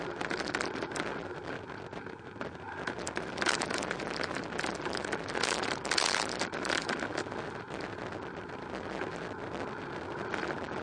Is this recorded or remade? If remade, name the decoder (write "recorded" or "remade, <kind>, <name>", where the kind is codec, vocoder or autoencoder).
recorded